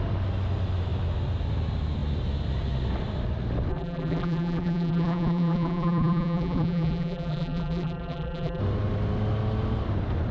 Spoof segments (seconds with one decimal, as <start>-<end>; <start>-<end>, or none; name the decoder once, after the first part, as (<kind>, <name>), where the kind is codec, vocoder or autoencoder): 3.7-8.6 (vocoder, BigVGAN v2)